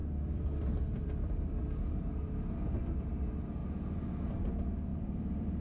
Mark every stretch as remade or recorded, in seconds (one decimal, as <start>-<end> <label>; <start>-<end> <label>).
0.0-1.6 remade; 1.6-4.9 recorded; 4.9-5.6 remade